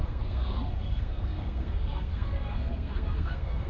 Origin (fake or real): fake